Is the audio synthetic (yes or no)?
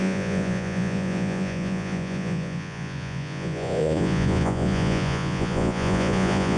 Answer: yes